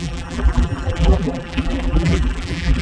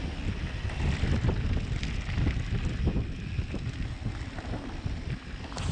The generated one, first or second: first